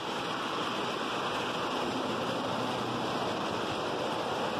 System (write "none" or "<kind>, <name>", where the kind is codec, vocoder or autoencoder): vocoder, BigVGAN v2